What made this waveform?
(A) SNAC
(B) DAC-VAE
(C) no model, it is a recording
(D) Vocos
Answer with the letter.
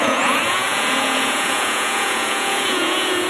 D